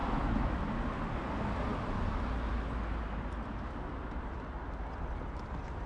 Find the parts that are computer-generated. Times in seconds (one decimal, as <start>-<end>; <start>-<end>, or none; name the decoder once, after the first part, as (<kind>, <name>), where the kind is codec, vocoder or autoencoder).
none